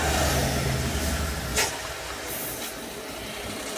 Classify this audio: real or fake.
real